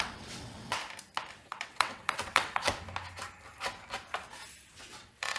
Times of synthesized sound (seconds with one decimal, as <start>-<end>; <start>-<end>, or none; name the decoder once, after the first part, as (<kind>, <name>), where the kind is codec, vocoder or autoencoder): 0.0-0.8 (vocoder, WaveNeXt); 1.3-2.7; 5.0-5.4